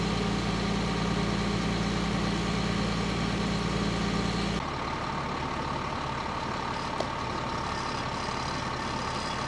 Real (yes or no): yes